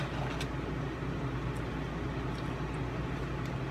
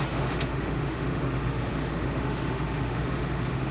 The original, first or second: first